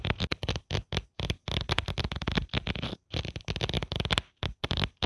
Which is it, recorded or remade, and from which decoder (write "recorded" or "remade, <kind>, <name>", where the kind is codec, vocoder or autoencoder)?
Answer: recorded